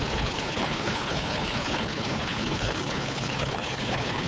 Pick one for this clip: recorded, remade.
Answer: remade